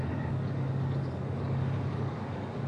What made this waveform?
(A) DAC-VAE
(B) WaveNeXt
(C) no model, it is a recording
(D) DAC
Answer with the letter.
D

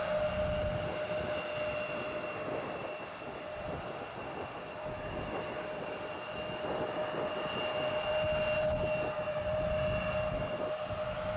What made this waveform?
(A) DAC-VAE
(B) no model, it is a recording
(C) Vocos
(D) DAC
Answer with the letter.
B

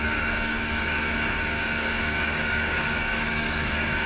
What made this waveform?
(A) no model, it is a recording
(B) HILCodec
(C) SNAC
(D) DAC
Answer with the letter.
D